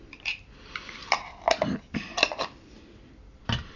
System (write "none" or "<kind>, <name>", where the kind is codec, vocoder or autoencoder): vocoder, BigVGAN v2